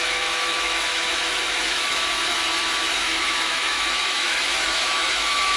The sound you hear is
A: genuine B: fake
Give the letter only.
B